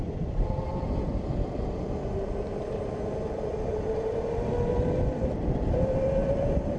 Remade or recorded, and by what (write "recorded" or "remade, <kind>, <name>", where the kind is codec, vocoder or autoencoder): recorded